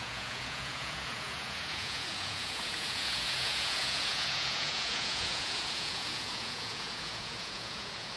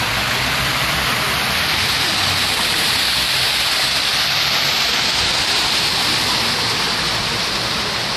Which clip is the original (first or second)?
second